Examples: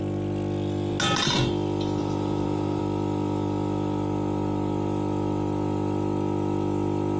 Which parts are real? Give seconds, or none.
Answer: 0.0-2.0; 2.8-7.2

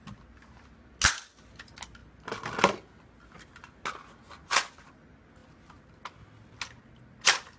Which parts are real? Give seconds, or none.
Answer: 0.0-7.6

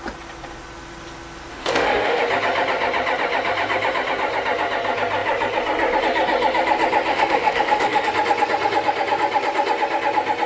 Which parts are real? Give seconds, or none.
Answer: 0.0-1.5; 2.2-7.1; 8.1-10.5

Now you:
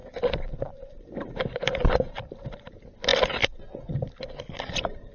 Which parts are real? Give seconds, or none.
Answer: 2.6-3.1; 3.9-5.1